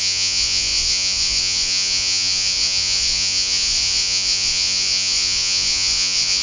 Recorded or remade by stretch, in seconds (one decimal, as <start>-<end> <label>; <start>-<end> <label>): 0.0-6.4 remade